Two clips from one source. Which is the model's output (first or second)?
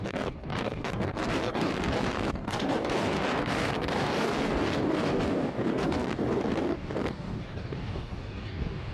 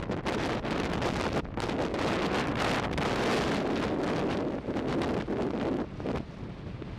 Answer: first